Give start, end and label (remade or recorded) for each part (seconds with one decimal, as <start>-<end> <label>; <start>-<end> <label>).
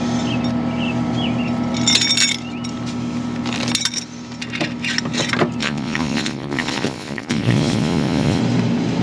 0.0-5.6 recorded; 5.6-8.4 remade; 8.4-9.0 recorded